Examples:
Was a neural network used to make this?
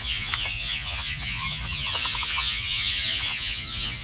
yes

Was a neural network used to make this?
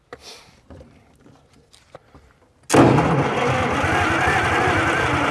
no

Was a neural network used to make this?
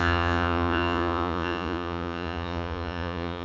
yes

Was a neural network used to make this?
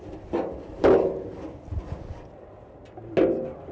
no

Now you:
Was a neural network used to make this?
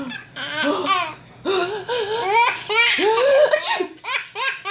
no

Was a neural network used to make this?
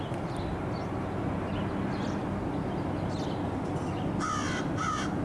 no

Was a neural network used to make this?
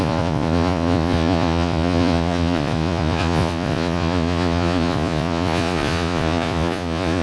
yes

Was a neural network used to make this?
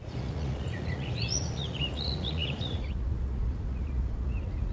yes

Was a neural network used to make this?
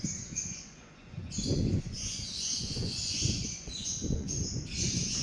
yes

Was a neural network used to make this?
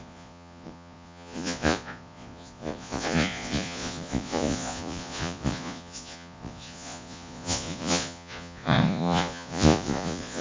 yes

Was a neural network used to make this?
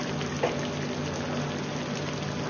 no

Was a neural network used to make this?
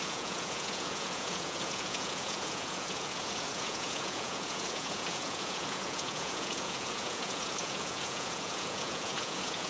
yes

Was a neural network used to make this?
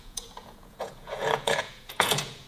yes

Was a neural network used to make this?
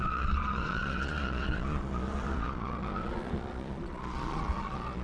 yes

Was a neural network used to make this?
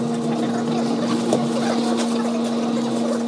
no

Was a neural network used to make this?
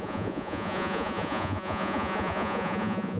yes